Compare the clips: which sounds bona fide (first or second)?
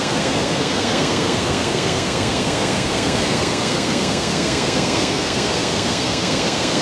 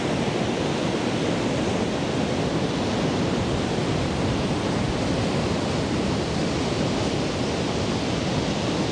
second